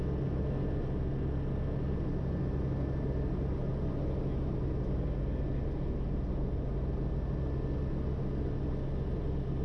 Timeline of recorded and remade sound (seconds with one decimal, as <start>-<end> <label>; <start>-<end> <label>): 0.0-9.6 recorded

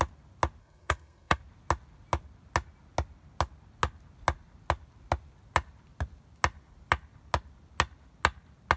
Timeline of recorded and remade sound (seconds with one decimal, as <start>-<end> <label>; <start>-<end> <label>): 0.0-0.6 recorded; 0.6-1.4 remade; 1.4-8.8 recorded

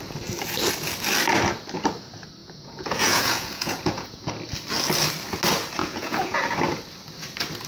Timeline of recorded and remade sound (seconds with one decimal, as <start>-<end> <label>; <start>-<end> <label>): 0.0-2.4 recorded; 2.4-4.3 remade; 4.3-5.8 recorded; 5.8-6.4 remade; 6.4-7.7 recorded